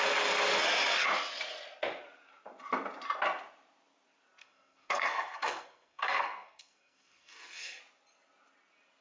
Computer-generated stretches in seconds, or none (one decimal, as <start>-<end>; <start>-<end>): 4.4-7.8